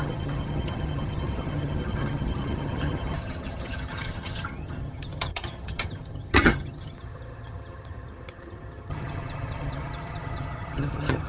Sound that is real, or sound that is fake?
fake